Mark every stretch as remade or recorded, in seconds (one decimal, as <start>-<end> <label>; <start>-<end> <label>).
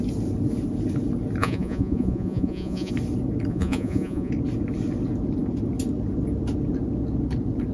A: 0.0-1.4 recorded; 1.4-2.9 remade; 2.9-3.5 recorded; 3.5-4.3 remade; 4.3-7.7 recorded